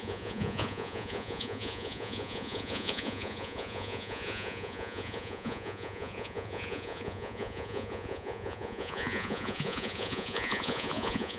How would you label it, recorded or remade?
remade